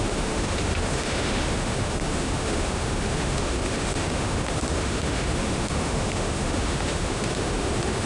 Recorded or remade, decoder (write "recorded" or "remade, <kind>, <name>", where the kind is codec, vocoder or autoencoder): remade, autoencoder, DAC-VAE